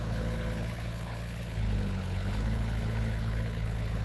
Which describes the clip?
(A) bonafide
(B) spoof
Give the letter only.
B